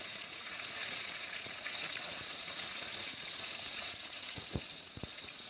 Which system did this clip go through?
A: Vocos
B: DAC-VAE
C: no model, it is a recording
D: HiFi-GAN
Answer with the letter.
A